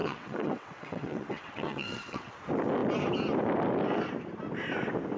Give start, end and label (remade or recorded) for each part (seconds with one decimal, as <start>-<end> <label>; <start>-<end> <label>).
0.0-2.3 remade; 2.3-5.2 recorded